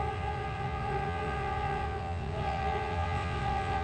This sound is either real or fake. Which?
fake